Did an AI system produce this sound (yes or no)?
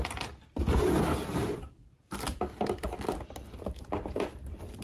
no